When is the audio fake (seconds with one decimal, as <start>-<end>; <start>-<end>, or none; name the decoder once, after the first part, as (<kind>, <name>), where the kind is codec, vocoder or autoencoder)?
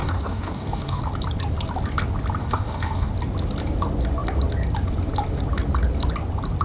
0.0-1.0 (codec, DAC); 2.4-3.1